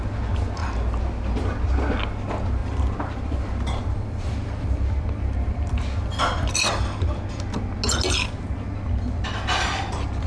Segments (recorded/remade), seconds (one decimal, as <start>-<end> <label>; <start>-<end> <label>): 0.0-2.6 recorded; 2.6-6.8 remade; 6.8-10.3 recorded